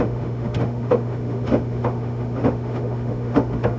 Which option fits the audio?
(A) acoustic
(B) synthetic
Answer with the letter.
B